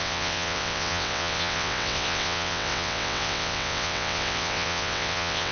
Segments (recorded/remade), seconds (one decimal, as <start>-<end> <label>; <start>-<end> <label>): 0.0-5.5 remade